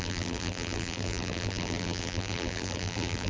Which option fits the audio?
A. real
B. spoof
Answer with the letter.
B